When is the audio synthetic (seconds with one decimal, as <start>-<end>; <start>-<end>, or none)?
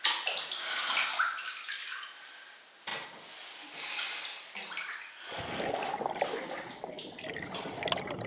none